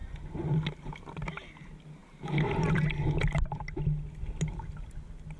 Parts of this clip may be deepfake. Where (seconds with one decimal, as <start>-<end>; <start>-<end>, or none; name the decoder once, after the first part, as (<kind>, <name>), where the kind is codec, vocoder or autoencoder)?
none